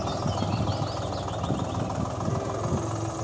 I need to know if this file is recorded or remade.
recorded